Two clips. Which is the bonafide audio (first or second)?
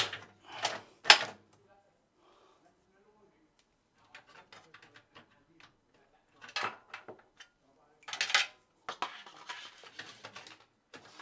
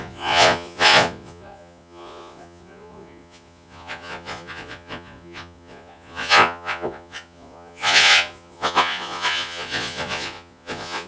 first